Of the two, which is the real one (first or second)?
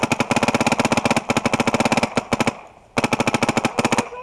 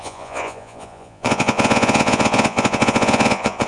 first